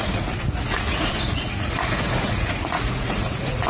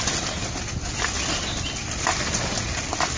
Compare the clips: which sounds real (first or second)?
second